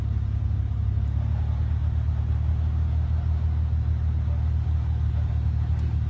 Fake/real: real